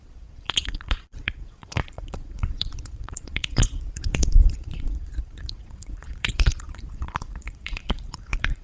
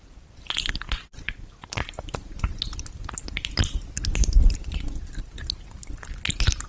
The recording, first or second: second